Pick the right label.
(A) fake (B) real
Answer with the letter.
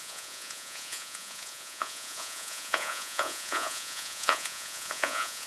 A